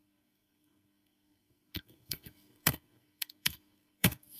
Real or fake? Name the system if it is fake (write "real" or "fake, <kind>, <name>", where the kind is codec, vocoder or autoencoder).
fake, codec, SNAC